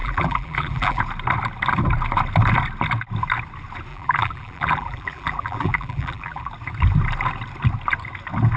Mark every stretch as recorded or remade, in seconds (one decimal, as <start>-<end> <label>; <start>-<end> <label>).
0.0-1.0 remade; 1.0-3.9 recorded; 3.9-6.5 remade; 6.5-8.6 recorded